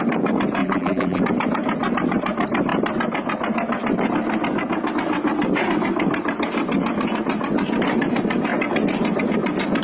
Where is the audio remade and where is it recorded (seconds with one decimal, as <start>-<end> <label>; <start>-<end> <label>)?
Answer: 0.0-0.6 recorded; 0.6-1.2 remade; 1.2-9.8 recorded

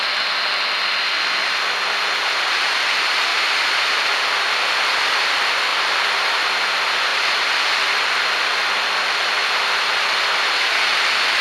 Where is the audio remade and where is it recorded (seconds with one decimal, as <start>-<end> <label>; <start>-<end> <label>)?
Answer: 0.0-5.7 recorded; 5.7-6.5 remade; 6.5-11.4 recorded

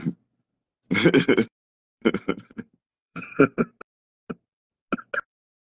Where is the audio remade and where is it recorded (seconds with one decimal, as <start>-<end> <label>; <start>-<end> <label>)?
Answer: 0.0-2.9 recorded; 2.9-3.4 remade; 3.4-5.8 recorded

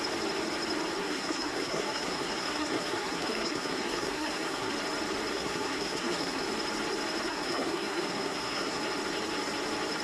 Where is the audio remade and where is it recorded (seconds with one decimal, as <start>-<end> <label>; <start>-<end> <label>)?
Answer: 0.0-1.0 recorded; 1.0-4.7 remade; 4.7-5.3 recorded; 5.3-6.4 remade; 6.4-7.3 recorded; 7.3-8.8 remade; 8.8-10.0 recorded

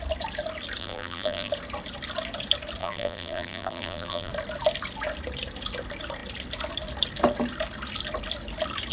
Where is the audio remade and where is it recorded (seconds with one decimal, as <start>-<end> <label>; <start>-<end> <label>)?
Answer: 0.0-0.8 recorded; 0.8-1.5 remade; 1.5-2.8 recorded; 2.8-4.3 remade; 4.3-8.9 recorded